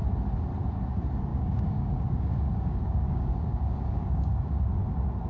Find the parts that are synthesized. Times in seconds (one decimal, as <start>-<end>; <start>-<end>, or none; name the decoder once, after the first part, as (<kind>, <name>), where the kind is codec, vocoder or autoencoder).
1.3-4.5 (codec, DAC)